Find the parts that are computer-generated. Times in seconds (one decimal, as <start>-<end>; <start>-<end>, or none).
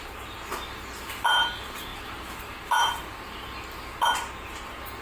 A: none